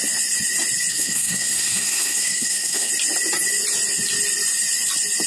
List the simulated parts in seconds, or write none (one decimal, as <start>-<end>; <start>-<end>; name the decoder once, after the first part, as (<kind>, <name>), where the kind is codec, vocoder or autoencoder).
0.9-2.9 (codec, SNAC)

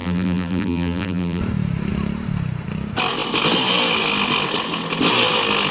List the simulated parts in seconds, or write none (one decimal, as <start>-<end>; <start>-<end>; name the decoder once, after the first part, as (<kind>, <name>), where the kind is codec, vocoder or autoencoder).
0.0-1.4 (vocoder, BigVGAN v2)

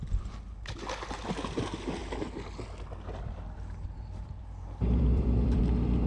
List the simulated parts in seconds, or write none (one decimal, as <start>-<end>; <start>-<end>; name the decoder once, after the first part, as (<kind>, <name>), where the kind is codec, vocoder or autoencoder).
2.0-5.6 (vocoder, BigVGAN v2)

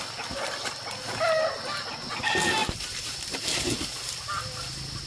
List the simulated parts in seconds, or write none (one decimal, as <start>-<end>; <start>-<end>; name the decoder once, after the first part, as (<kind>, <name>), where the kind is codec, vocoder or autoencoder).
none

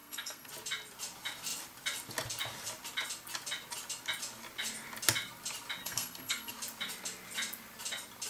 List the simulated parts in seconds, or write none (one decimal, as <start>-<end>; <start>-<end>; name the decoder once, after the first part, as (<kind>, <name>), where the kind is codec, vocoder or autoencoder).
0.0-0.5 (codec, SNAC); 5.8-6.5

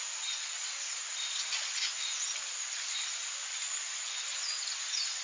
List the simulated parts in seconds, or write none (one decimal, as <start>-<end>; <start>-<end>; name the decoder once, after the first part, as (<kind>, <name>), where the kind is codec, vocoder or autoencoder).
none

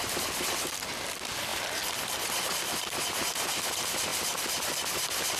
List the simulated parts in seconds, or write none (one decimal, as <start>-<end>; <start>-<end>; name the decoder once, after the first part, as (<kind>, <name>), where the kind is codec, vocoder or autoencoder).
4.1-5.4 (vocoder, BigVGAN v2)